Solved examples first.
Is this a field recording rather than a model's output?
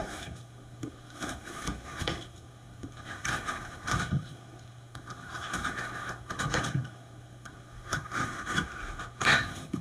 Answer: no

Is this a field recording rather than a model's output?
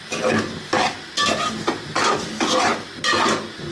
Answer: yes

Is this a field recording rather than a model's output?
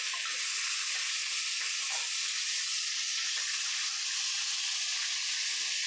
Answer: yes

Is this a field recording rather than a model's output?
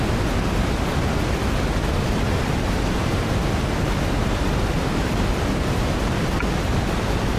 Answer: yes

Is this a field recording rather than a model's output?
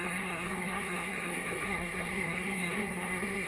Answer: no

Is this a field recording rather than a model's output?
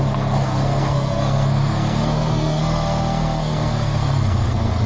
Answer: no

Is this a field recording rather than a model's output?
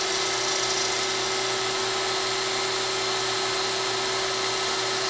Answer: yes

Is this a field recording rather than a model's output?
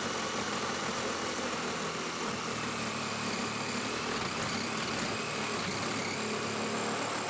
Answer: yes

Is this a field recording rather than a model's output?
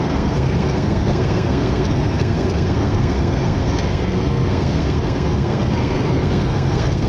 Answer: no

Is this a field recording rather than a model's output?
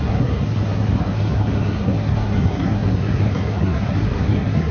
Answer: no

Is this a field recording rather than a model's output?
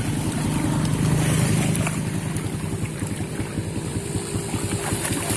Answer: yes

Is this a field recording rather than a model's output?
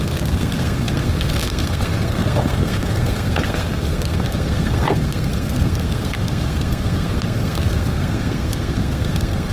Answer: no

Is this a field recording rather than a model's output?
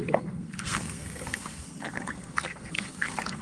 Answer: no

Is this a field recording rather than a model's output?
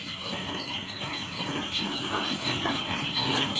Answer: no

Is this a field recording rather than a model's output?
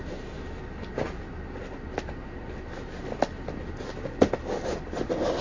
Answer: yes